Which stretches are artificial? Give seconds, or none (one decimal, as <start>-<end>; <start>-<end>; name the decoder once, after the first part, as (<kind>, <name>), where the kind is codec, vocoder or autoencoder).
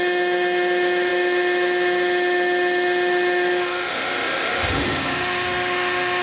0.0-6.2 (autoencoder, DAC-VAE)